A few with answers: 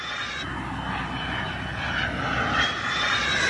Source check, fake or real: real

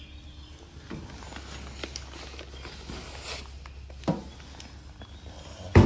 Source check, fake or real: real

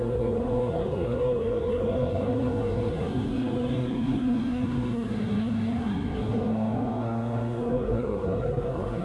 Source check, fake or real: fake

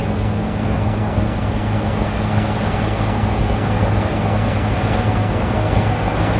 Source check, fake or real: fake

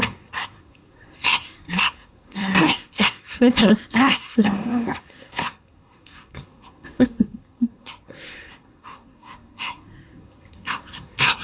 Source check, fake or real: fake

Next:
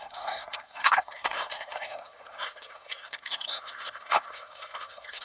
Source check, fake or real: fake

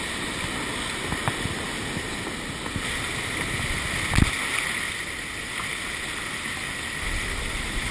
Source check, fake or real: real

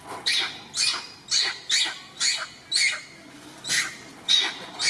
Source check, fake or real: real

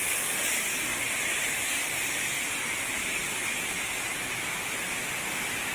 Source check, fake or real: real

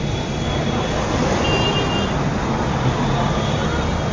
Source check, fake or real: real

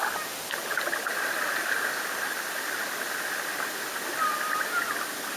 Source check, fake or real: real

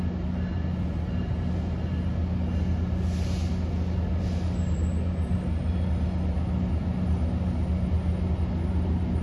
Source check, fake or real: real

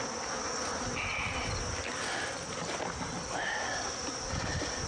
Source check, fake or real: real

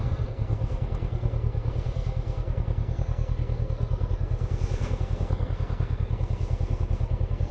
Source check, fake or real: fake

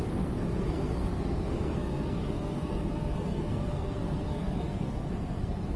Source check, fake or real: fake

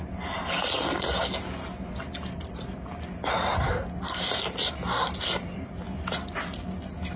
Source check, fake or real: real